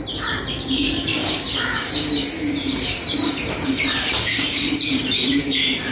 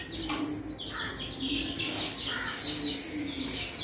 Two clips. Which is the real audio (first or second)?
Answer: second